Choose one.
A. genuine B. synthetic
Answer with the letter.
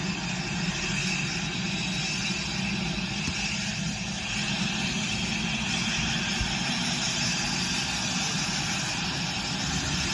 A